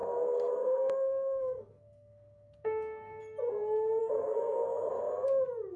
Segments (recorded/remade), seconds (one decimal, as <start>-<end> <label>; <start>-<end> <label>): 0.0-3.2 remade; 3.2-4.0 recorded; 4.0-4.9 remade; 4.9-5.8 recorded